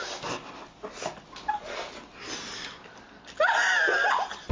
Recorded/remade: recorded